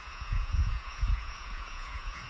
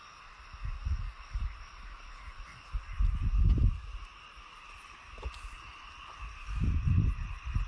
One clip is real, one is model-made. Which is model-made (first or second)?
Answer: first